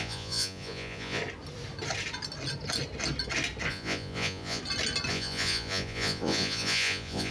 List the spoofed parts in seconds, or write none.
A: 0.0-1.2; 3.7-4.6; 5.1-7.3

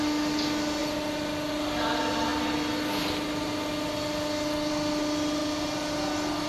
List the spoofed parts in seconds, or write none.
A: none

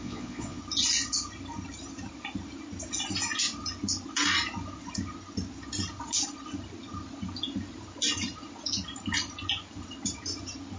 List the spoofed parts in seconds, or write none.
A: 0.0-0.6

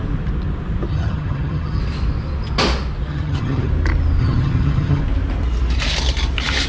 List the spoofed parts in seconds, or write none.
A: 0.9-1.8; 3.1-3.7; 4.2-5.0

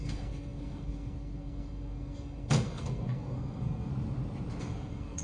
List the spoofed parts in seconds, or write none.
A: 0.0-3.9; 4.6-5.2

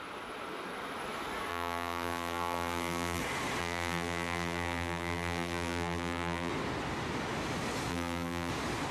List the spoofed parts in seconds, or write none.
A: 1.5-3.2; 3.6-6.5; 7.9-8.5

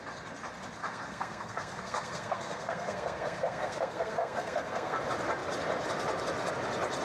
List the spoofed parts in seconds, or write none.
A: 0.8-5.0